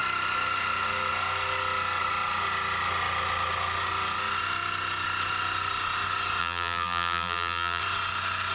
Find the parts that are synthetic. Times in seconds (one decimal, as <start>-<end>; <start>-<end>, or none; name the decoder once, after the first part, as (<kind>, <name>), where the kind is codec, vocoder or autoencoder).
6.4-7.8 (vocoder, BigVGAN v2)